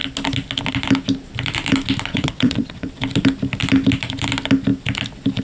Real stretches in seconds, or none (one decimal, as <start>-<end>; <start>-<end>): 0.0-2.1; 2.9-5.4